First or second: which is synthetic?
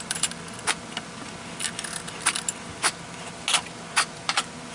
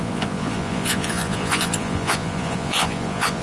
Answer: second